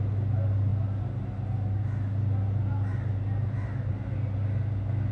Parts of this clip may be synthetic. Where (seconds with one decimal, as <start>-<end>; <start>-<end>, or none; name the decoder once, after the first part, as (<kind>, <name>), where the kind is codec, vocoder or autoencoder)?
2.9-3.9 (vocoder, BigVGAN v2)